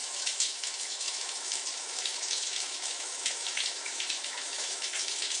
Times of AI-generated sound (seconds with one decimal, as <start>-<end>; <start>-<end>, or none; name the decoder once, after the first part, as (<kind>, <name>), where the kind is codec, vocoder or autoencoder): 0.0-5.4 (autoencoder, DAC-VAE)